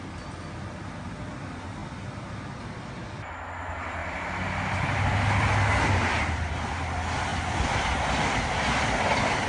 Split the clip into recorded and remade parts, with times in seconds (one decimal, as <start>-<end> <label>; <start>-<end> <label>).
0.0-1.8 recorded; 1.8-3.1 remade; 3.1-4.0 recorded; 4.0-6.8 remade; 6.8-9.5 recorded